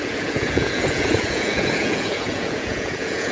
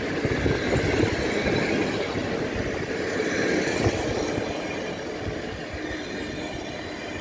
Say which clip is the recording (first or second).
second